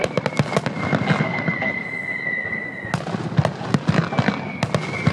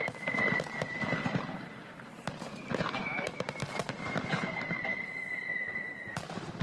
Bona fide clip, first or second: first